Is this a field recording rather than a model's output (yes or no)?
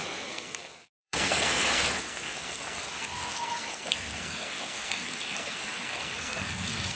no